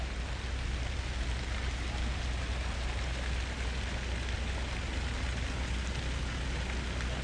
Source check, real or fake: real